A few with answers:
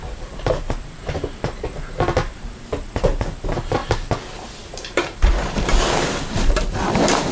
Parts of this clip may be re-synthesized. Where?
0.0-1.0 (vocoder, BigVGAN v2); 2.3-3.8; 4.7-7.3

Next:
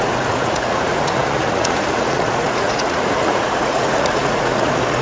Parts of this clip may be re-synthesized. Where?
0.0-5.0 (vocoder, Vocos)

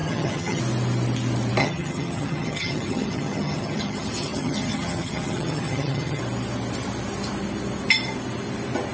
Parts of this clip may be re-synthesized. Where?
0.0-0.6 (vocoder, HiFi-GAN); 1.6-6.2

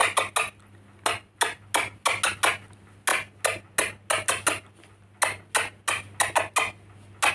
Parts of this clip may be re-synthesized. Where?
none